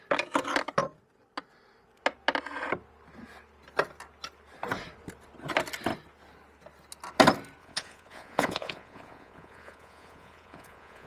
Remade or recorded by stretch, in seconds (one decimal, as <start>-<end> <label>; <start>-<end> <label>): 0.0-7.6 recorded; 7.6-11.1 remade